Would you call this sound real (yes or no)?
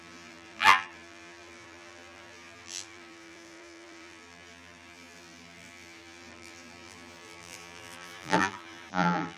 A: no